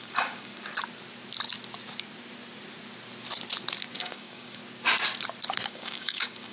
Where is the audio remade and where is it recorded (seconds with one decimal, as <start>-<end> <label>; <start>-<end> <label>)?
0.0-0.5 remade; 0.5-4.0 recorded; 4.0-4.6 remade; 4.6-5.7 recorded; 5.7-6.5 remade